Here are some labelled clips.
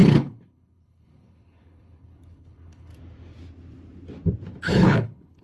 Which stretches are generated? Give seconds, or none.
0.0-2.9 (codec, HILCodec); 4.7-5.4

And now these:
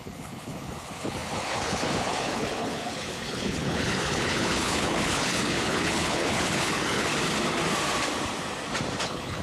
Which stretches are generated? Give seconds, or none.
0.0-7.1 (codec, HILCodec); 9.0-9.4